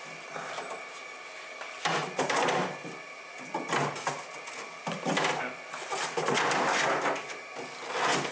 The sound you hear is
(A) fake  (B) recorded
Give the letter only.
B